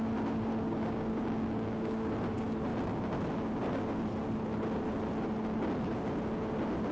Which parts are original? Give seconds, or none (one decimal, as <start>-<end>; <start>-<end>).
0.0-0.5; 2.1-6.9

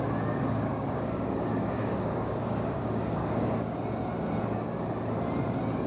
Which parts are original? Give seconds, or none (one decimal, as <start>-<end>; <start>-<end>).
0.0-0.4; 3.8-5.9

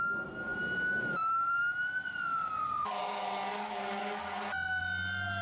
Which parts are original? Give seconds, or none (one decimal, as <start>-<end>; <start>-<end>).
0.0-3.0; 4.2-5.4